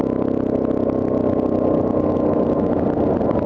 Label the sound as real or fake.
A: real